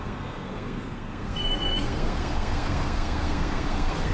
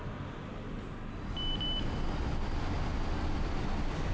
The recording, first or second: second